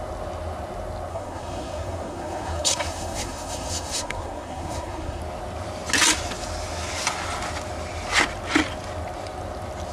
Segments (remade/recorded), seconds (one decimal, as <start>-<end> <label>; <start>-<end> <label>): 0.0-1.1 recorded; 1.1-5.2 remade; 5.2-9.9 recorded